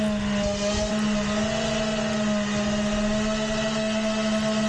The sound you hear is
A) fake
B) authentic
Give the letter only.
B